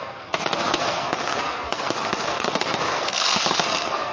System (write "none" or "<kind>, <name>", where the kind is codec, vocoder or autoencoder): codec, SNAC